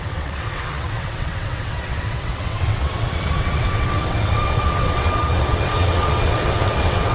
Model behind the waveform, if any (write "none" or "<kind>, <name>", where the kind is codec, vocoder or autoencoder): vocoder, WaveNeXt